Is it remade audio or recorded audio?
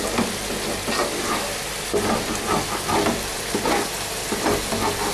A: recorded